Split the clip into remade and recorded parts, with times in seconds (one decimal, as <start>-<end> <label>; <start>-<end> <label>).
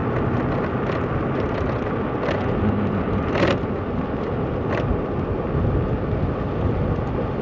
0.0-7.4 recorded